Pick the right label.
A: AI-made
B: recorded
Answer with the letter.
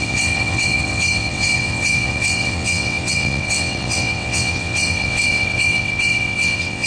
A